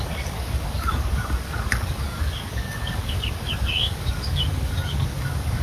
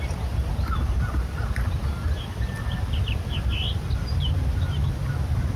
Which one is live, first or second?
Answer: second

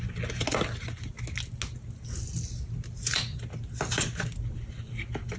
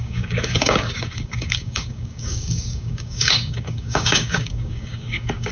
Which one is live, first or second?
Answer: first